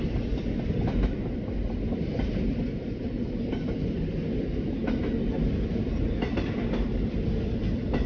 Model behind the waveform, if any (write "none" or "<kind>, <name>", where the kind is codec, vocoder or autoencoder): none